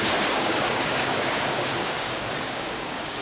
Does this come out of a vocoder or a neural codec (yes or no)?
yes